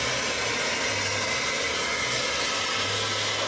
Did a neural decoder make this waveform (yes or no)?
no